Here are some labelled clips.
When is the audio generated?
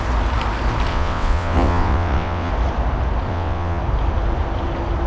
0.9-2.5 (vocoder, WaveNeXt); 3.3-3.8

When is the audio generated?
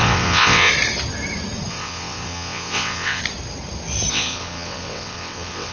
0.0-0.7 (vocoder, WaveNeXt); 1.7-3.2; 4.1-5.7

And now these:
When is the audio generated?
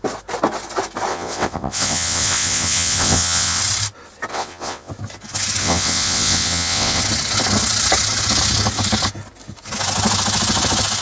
1.1-3.6 (vocoder, WaveNeXt); 4.3-4.9; 5.6-7.0